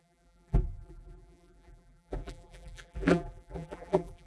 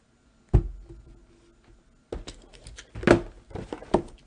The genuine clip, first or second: second